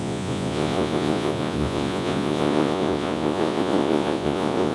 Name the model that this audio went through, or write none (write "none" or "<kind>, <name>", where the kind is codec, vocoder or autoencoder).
vocoder, Vocos